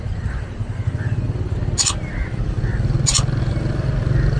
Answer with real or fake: real